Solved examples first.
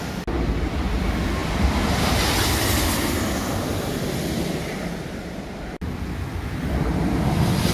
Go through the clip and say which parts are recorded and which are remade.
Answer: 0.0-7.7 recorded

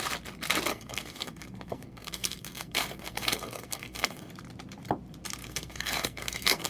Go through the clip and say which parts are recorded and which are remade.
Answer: 0.0-0.7 recorded; 0.7-4.3 remade; 4.3-5.4 recorded; 5.4-6.7 remade

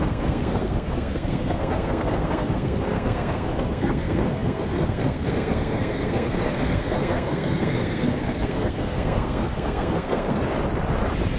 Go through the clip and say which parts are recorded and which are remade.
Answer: 0.0-10.4 remade; 10.4-11.4 recorded

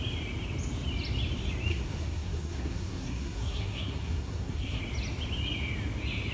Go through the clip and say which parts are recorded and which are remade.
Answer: 0.0-1.7 recorded; 1.7-4.8 remade; 4.8-6.3 recorded

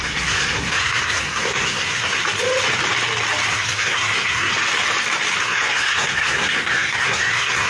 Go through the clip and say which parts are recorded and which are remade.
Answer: 0.0-2.2 remade; 2.2-3.5 recorded; 3.5-4.5 remade; 4.5-5.4 recorded; 5.4-7.7 remade